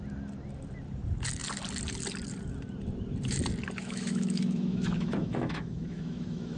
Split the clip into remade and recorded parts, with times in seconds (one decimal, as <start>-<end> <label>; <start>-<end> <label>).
0.0-3.8 recorded; 3.8-6.6 remade